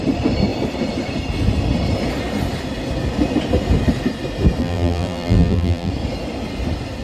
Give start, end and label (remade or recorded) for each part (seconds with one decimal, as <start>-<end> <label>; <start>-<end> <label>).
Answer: 0.0-4.6 recorded; 4.6-5.9 remade; 5.9-7.0 recorded

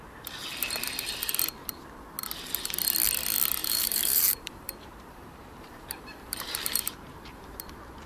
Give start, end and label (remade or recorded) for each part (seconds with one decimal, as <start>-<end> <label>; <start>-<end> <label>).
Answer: 0.0-3.6 recorded; 3.6-7.6 remade; 7.6-8.1 recorded

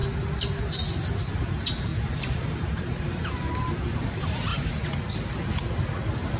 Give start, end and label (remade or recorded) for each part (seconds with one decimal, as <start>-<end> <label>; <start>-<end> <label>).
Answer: 0.0-0.6 recorded; 0.6-4.5 remade; 4.5-6.4 recorded

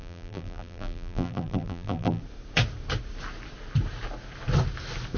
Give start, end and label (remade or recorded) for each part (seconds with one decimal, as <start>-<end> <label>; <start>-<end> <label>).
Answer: 0.0-2.2 remade; 2.2-5.2 recorded

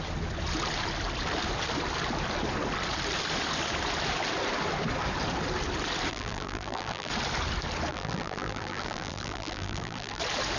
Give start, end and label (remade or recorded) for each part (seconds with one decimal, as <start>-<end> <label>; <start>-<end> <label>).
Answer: 0.0-6.1 recorded; 6.1-7.1 remade; 7.1-7.9 recorded; 7.9-10.2 remade; 10.2-10.6 recorded

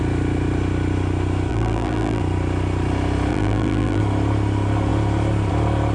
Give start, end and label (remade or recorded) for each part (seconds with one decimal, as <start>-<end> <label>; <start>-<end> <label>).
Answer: 0.0-1.5 recorded; 1.5-2.2 remade; 2.2-3.3 recorded; 3.3-4.0 remade; 4.0-5.9 recorded